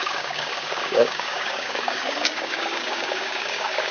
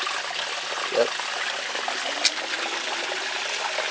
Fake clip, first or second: first